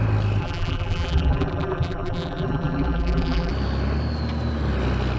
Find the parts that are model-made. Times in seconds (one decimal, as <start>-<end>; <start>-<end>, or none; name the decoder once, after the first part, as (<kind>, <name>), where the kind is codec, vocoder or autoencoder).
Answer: 0.4-3.5 (vocoder, BigVGAN v2)

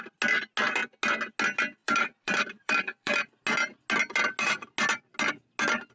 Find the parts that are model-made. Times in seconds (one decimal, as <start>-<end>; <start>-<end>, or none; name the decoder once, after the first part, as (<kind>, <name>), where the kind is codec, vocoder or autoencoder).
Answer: 1.8-3.2 (vocoder, BigVGAN v2)

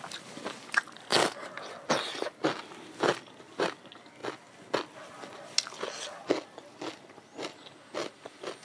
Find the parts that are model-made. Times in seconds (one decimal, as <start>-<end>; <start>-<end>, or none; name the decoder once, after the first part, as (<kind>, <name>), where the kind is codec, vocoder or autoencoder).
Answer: none

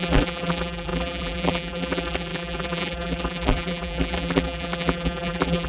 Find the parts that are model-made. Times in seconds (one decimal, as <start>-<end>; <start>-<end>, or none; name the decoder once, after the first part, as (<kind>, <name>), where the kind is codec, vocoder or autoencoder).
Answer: 0.0-5.7 (vocoder, BigVGAN v2)

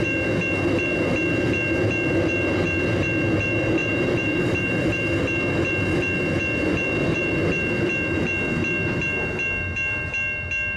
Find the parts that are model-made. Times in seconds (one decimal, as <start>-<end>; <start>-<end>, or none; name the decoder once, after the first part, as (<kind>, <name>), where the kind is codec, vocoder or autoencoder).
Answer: 3.8-5.2 (vocoder, BigVGAN v2)